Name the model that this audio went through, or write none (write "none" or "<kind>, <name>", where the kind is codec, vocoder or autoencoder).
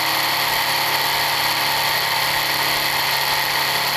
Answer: none